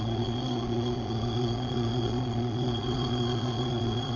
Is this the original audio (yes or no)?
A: no